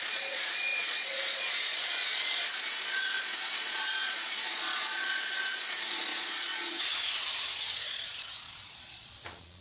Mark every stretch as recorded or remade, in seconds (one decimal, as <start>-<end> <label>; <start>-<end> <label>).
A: 0.0-9.6 remade